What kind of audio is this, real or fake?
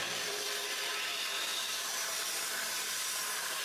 fake